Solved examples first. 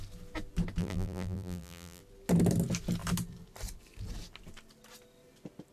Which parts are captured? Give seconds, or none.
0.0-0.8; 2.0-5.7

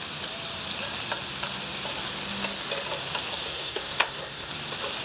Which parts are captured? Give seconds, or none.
0.0-3.5; 4.5-5.0

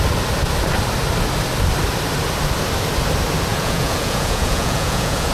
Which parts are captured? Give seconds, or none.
0.0-3.5

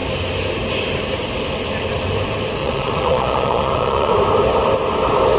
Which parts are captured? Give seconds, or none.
0.0-2.6; 4.1-5.4

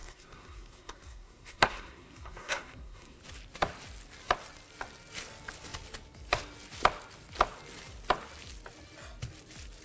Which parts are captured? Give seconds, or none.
3.2-9.8